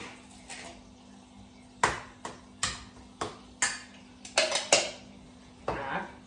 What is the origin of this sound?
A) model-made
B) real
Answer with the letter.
B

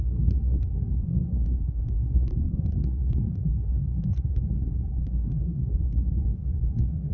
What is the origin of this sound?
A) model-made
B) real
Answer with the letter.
A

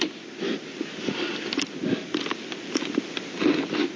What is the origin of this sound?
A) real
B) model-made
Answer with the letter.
A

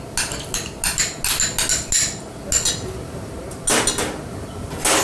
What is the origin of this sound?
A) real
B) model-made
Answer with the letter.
A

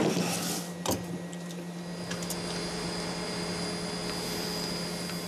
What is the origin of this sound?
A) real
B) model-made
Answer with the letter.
A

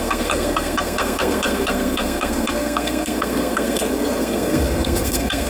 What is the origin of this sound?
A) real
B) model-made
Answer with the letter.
B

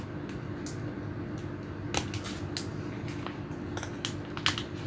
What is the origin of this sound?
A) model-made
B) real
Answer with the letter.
B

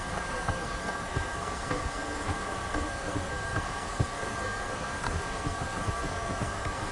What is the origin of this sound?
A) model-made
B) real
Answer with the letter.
A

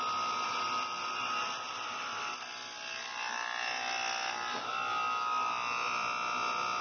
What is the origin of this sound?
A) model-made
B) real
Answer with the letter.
B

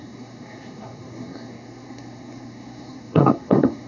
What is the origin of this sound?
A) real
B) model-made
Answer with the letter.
B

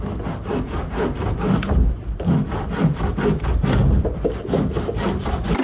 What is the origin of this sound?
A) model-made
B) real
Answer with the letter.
B